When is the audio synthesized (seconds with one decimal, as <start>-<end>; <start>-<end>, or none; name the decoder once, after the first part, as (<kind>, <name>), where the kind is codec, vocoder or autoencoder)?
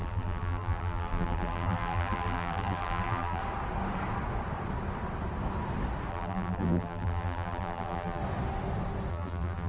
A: 0.0-3.4 (vocoder, BigVGAN v2); 6.1-8.2; 9.1-9.7